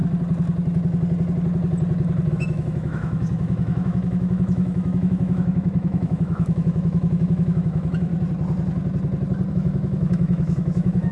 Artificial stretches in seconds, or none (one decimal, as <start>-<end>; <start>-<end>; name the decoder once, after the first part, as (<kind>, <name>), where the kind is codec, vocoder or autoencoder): 2.3-8.1 (autoencoder, DAC-VAE); 9.5-11.1